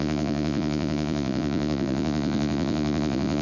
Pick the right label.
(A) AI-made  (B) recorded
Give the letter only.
A